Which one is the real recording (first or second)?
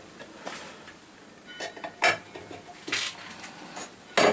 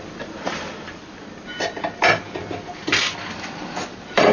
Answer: first